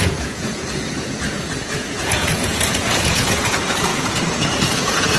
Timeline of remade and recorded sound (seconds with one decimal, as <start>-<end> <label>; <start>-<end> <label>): 0.0-5.2 remade